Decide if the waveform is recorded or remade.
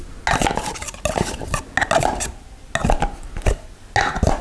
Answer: recorded